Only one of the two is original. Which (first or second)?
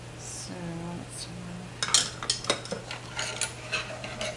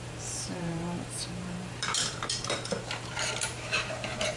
first